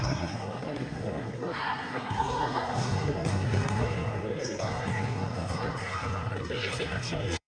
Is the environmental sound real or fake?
fake